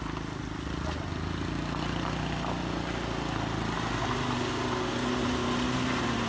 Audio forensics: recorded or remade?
recorded